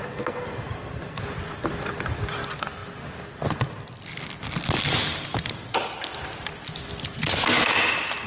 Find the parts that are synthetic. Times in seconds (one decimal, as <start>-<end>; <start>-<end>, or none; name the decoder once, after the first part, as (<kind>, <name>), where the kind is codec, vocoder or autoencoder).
0.0-1.2 (codec, SNAC)